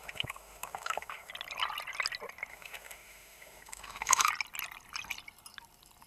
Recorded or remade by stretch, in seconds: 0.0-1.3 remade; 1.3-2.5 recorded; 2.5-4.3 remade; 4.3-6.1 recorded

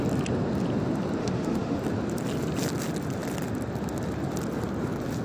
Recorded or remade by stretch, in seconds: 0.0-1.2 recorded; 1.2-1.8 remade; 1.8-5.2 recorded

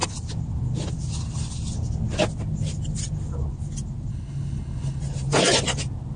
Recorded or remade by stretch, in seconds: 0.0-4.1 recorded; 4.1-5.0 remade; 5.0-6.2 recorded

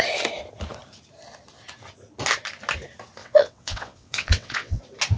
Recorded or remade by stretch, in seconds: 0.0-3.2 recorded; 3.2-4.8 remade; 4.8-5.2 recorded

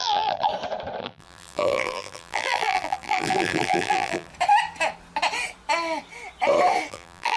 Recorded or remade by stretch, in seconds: 0.0-0.5 remade; 0.5-1.0 recorded; 1.0-4.3 remade; 4.3-6.9 recorded; 6.9-7.4 remade